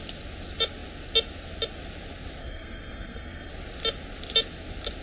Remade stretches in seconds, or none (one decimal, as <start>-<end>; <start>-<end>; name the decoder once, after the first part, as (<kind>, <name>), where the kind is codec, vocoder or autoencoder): 2.4-3.5 (codec, SNAC)